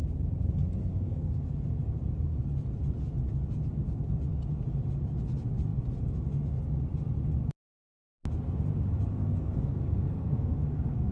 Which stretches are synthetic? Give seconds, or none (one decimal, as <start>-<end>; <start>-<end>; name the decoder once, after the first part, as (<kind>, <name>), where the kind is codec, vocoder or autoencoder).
0.8-1.3 (codec, SNAC); 9.2-11.1